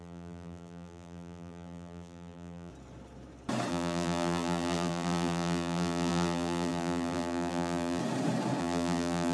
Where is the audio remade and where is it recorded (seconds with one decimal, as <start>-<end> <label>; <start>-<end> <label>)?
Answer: 0.0-2.7 remade; 2.7-3.7 recorded; 3.7-8.0 remade; 8.0-8.6 recorded; 8.6-9.3 remade